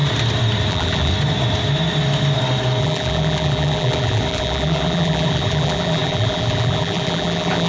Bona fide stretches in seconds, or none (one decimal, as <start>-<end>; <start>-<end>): 0.0-0.7; 1.1-2.8